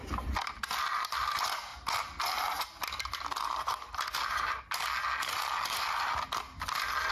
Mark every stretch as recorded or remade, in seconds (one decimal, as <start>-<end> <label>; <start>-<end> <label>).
0.0-7.1 recorded